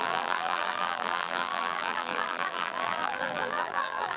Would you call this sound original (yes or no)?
no